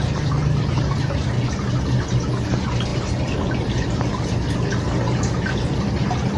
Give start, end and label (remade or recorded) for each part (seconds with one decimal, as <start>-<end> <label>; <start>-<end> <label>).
0.0-0.4 recorded; 0.4-0.9 remade; 0.9-2.9 recorded; 2.9-3.9 remade; 3.9-6.4 recorded